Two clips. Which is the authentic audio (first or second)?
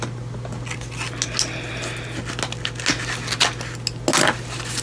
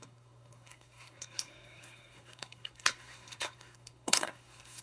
first